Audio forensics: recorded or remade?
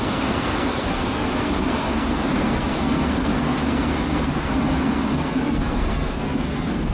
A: remade